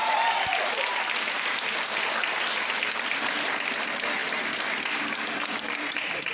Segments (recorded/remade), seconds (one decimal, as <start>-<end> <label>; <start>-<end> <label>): 0.0-6.3 recorded